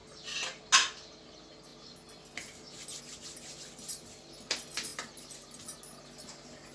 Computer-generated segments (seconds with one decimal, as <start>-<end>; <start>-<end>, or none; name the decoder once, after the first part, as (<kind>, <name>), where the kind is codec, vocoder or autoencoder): none